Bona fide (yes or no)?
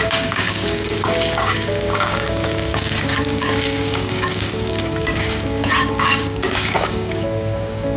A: no